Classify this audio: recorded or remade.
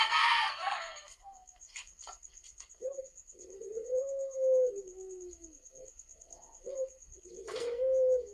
remade